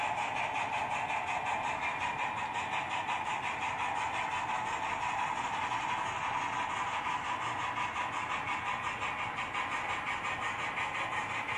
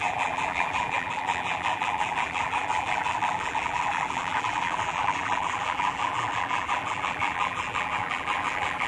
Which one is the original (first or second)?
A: first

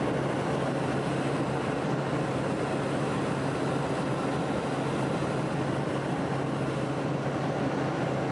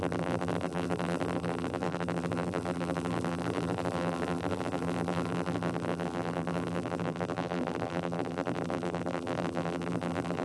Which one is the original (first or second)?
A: first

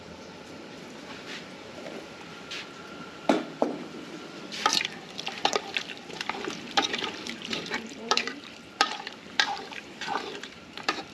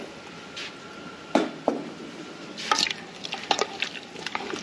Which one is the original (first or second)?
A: second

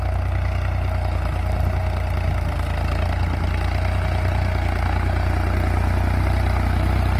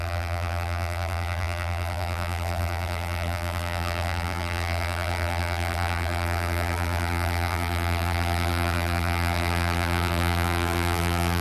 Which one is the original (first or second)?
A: first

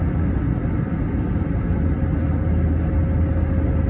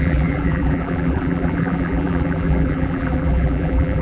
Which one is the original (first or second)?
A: first